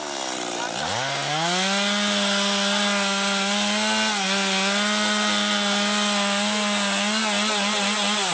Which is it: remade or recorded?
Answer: recorded